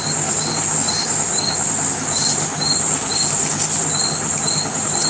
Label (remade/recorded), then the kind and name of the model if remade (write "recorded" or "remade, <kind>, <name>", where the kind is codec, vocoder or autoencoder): recorded